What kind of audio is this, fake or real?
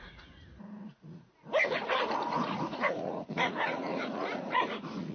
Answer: fake